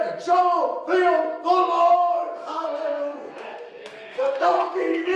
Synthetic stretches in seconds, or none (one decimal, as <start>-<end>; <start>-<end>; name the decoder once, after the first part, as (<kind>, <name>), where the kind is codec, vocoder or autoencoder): 2.4-5.2 (codec, SNAC)